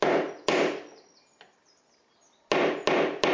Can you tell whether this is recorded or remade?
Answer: recorded